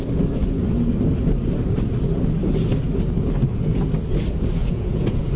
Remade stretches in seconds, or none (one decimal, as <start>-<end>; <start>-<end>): 4.6-5.4